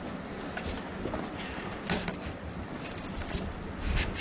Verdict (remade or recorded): recorded